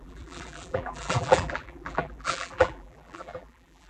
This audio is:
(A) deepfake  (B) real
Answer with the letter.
A